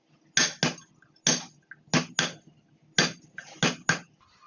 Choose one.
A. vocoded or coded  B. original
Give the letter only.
B